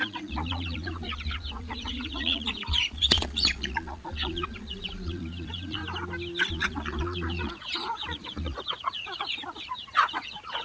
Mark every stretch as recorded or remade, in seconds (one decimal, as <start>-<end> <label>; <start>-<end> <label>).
0.0-5.8 remade; 5.8-6.5 recorded; 6.5-10.6 remade